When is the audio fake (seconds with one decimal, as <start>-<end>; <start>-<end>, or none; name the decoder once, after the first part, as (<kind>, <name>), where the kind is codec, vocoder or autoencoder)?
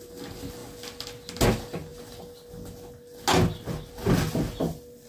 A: none